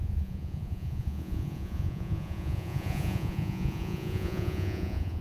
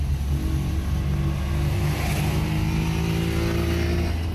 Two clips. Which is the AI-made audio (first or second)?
first